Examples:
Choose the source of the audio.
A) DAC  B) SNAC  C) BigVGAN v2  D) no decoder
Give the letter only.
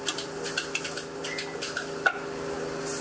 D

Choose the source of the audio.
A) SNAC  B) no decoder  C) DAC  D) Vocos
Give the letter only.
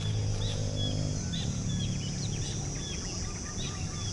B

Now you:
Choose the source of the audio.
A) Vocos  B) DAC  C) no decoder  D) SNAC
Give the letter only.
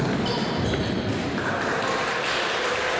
C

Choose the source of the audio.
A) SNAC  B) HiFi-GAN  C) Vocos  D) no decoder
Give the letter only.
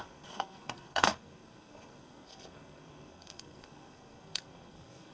A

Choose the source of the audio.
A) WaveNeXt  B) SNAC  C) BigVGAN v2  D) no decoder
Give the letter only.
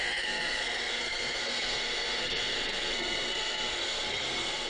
B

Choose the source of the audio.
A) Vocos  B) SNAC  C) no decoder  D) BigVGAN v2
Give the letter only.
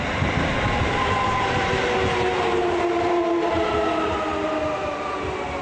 C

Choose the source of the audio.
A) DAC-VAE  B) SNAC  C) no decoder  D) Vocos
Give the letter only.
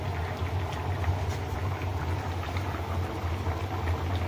C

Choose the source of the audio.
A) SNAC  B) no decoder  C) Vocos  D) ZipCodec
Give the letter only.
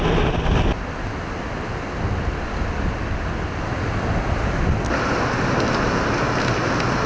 B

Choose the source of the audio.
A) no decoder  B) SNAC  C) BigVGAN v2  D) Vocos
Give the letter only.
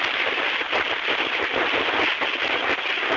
A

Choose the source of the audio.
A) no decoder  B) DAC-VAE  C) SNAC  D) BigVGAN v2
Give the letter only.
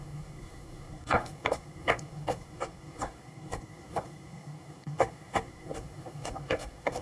C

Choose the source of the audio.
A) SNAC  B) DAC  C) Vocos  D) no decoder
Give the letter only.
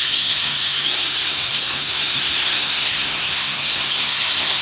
A